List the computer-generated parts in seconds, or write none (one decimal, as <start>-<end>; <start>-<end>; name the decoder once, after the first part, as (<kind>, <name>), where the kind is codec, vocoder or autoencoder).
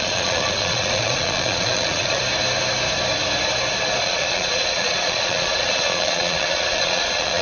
0.0-2.2 (vocoder, Vocos); 4.0-7.4